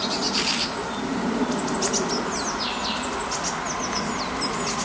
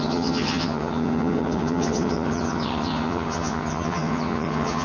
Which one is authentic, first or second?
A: first